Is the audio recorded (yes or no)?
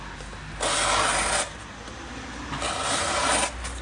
yes